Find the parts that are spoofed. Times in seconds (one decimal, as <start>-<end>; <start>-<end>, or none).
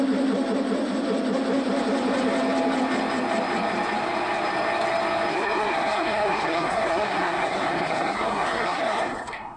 5.3-9.6